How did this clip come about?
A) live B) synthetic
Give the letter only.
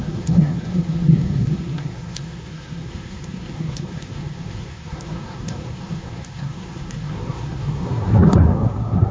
B